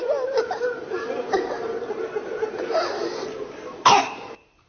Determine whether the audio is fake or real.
fake